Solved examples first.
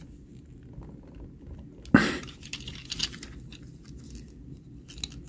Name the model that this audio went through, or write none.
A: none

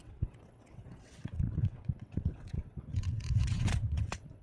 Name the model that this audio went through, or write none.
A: vocoder, WaveNeXt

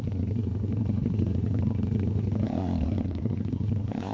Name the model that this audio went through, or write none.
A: codec, SNAC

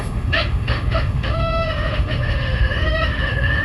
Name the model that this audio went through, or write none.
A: autoencoder, DAC-VAE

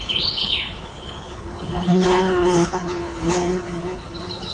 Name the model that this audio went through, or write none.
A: codec, HILCodec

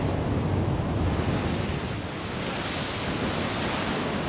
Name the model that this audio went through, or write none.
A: none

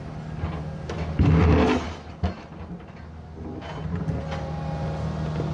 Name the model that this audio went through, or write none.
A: none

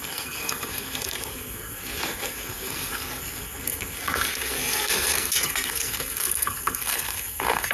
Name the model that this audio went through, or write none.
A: codec, SNAC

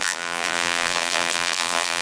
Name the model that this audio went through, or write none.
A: vocoder, BigVGAN v2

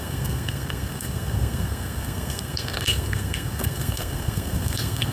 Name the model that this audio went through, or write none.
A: codec, SNAC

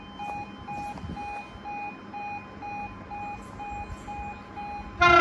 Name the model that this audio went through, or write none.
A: none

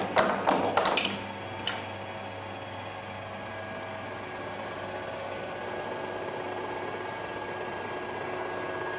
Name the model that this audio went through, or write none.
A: none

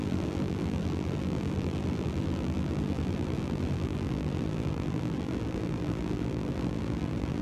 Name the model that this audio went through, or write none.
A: vocoder, BigVGAN v2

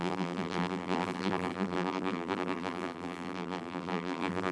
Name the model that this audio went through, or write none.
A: vocoder, BigVGAN v2